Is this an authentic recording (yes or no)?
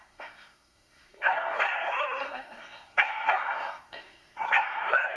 no